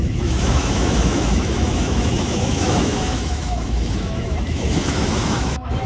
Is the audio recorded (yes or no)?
no